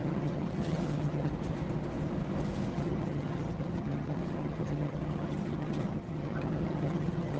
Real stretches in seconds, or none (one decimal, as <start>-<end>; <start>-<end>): 1.3-2.7